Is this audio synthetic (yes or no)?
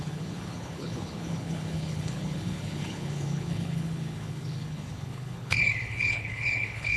yes